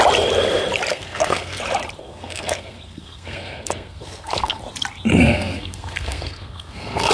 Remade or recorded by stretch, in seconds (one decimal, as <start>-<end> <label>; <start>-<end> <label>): 0.0-0.9 recorded; 0.9-1.6 remade; 1.6-2.0 recorded; 2.0-4.6 remade; 4.6-5.1 recorded; 5.1-7.1 remade